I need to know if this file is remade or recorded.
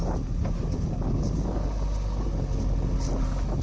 recorded